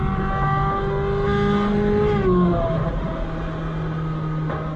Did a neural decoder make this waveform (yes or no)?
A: no